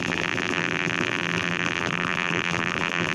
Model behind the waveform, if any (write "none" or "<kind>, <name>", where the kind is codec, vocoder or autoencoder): vocoder, BigVGAN v2